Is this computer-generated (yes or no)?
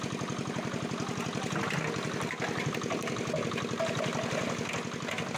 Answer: no